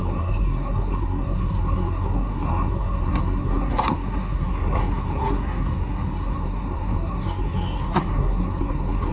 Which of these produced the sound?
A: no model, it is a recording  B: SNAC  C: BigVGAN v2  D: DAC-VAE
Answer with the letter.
B